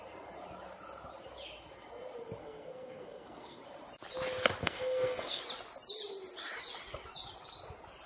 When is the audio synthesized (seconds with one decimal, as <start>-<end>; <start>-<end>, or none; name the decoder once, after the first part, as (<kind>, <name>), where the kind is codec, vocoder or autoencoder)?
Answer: 2.4-3.6 (codec, SNAC); 4.6-5.4